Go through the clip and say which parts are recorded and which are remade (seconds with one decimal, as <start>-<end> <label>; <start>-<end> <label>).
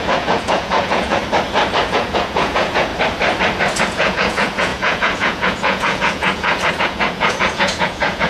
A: 0.0-1.2 remade; 1.2-1.9 recorded; 1.9-2.9 remade; 2.9-3.8 recorded; 3.8-8.3 remade